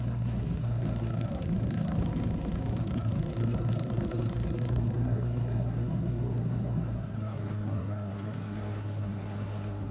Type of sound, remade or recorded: remade